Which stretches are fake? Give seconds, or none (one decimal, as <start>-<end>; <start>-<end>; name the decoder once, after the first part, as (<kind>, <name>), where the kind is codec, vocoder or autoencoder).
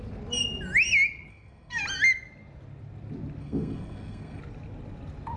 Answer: 1.3-1.8 (codec, SNAC); 3.4-4.4